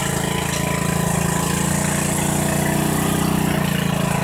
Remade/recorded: recorded